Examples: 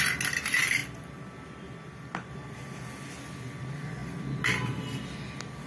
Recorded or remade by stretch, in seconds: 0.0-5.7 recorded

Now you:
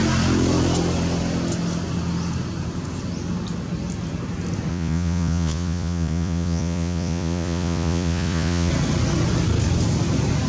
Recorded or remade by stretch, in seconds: 0.0-4.7 recorded; 4.7-8.7 remade; 8.7-10.5 recorded

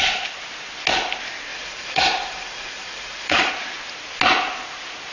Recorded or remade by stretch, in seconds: 0.0-1.5 recorded; 1.5-3.5 remade; 3.5-5.1 recorded

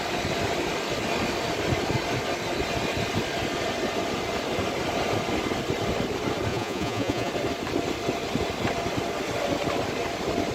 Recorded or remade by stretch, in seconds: 0.0-6.5 recorded; 6.5-7.3 remade; 7.3-10.5 recorded

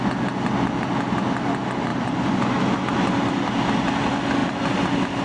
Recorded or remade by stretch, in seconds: 0.0-5.2 recorded

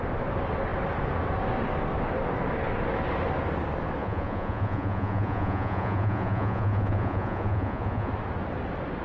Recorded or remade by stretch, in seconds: 0.0-4.0 recorded; 4.0-8.1 remade; 8.1-9.0 recorded

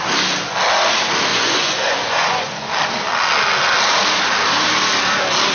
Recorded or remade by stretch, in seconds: 0.0-1.3 recorded; 1.3-2.7 remade; 2.7-5.5 recorded